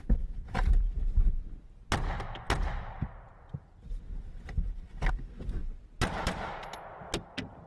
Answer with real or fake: real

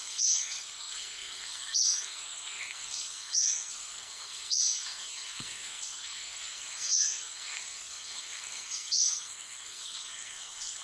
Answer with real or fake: fake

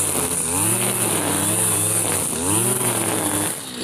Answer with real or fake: real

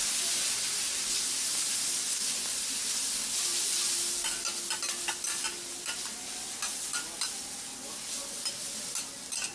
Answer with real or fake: real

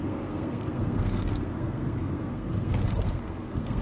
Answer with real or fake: fake